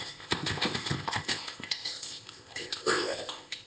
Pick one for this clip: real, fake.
fake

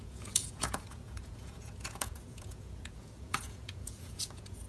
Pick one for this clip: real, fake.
fake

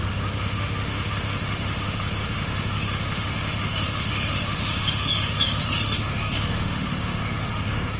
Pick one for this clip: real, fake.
fake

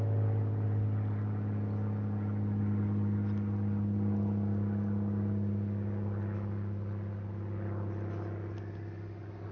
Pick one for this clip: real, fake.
real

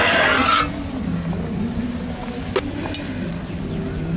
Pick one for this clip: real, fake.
real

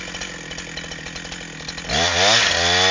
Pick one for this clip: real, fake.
real